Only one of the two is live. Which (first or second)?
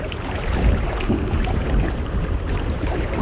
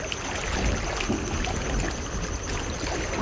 second